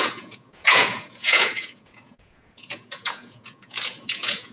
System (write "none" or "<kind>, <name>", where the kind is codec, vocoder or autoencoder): vocoder, Vocos